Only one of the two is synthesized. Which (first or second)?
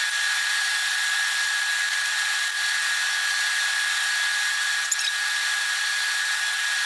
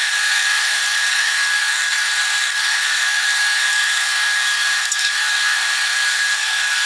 second